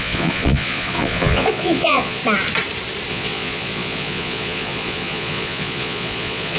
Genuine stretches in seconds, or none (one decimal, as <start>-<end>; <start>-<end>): 2.2-3.1